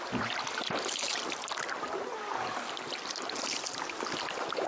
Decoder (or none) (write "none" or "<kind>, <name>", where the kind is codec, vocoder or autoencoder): none